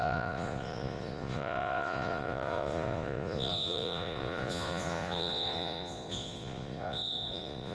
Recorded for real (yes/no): no